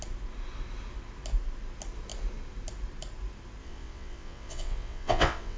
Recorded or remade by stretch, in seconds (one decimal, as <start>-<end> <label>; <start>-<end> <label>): 0.0-3.6 recorded; 3.6-5.6 remade